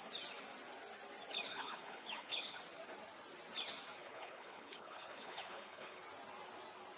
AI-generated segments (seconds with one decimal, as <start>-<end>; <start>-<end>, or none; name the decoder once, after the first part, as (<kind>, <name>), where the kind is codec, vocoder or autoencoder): 1.5-2.6 (codec, HILCodec); 4.0-6.0